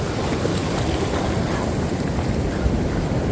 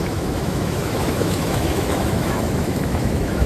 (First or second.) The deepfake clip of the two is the second